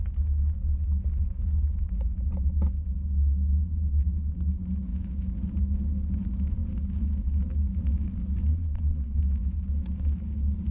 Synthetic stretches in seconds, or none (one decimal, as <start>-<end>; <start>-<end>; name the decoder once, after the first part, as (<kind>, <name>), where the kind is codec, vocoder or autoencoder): 8.5-9.2 (vocoder, Vocos)